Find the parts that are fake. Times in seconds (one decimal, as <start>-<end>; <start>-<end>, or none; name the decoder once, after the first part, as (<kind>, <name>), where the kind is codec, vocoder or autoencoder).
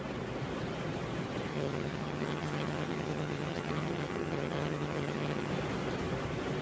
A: 1.5-5.5 (vocoder, HiFi-GAN)